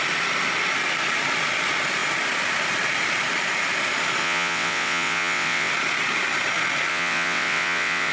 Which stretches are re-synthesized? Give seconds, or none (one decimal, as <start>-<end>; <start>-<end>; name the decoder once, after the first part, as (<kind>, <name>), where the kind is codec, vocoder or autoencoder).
4.2-5.7 (vocoder, WaveNeXt); 6.9-8.1